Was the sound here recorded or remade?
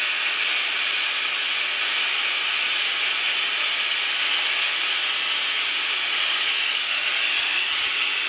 recorded